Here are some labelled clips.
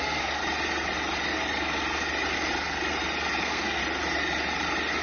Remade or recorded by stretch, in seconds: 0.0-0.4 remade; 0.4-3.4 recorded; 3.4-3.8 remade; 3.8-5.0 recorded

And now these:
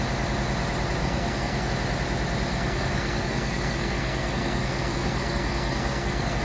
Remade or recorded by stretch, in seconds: 0.0-1.0 recorded; 1.0-1.7 remade; 1.7-2.5 recorded; 2.5-6.4 remade

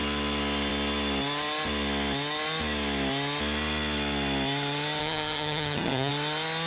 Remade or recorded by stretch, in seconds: 0.0-5.0 recorded; 5.0-6.1 remade; 6.1-6.7 recorded

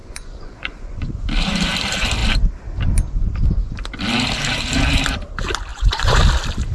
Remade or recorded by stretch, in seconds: 0.0-1.2 remade; 1.2-5.7 recorded; 5.7-6.2 remade; 6.2-6.7 recorded